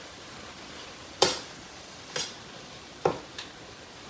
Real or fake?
fake